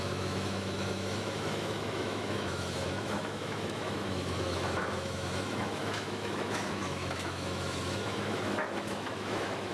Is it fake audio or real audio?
fake